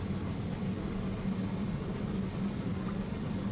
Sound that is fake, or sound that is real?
real